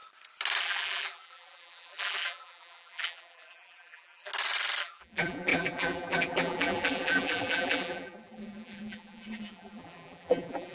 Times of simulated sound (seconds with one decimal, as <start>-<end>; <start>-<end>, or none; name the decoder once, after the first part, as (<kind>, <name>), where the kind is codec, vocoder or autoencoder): 0.6-4.3 (vocoder, BigVGAN v2); 4.8-10.7